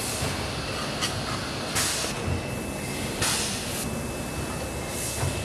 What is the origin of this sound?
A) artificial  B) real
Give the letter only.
B